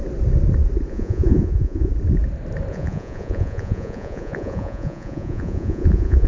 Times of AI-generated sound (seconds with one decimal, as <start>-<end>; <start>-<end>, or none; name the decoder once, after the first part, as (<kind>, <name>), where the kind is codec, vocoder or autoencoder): 0.9-1.9 (vocoder, Vocos); 2.7-6.3